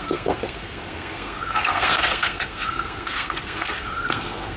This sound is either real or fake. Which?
fake